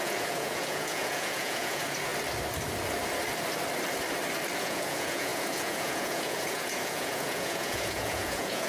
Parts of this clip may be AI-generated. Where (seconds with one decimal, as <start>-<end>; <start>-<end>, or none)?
0.0-2.1; 4.6-8.7